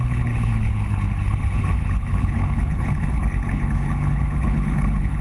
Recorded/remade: remade